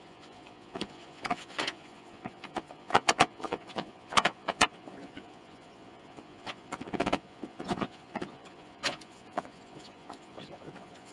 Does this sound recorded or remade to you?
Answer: remade